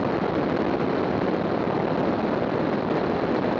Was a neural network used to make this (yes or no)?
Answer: no